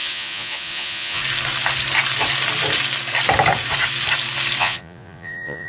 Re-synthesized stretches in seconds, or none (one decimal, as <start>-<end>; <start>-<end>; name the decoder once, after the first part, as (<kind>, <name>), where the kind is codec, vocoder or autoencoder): 0.0-1.2 (vocoder, Vocos); 4.6-5.7